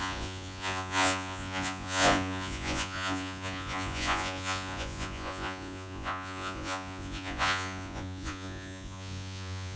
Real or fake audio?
fake